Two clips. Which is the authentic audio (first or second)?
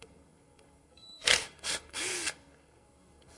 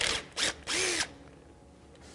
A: second